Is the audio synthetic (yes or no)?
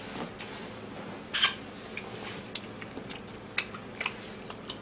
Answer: no